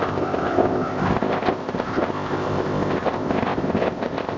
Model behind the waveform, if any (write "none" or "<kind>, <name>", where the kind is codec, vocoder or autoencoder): codec, ZipCodec